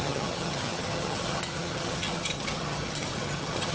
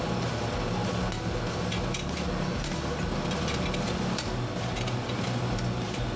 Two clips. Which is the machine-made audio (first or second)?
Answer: first